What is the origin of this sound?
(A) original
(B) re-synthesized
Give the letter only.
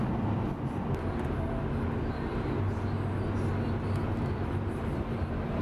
A